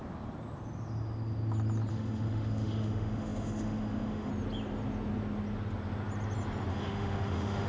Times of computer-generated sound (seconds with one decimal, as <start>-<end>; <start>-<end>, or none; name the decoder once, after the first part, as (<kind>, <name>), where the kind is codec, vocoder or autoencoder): 1.9-4.3 (autoencoder, DAC-VAE); 6.7-7.7